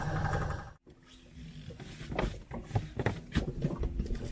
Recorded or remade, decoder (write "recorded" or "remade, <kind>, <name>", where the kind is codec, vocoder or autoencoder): recorded